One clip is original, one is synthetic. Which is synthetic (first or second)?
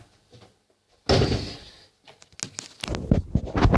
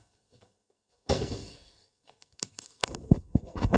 second